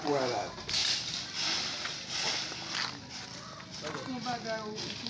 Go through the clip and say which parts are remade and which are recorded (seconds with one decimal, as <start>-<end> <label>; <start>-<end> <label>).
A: 0.0-5.1 recorded

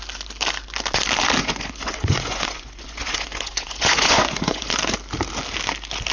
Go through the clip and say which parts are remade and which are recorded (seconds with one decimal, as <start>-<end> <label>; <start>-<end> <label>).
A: 0.0-1.4 recorded; 1.4-4.7 remade; 4.7-6.1 recorded

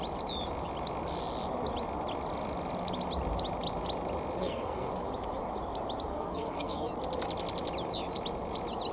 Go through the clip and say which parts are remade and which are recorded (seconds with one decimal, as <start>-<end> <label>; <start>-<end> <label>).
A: 0.0-4.4 recorded; 4.4-4.9 remade; 4.9-6.1 recorded; 6.1-6.9 remade; 6.9-8.9 recorded

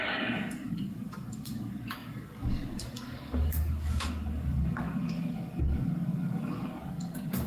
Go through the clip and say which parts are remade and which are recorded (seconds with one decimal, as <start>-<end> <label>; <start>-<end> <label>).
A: 0.0-7.5 remade